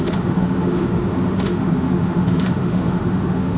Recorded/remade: remade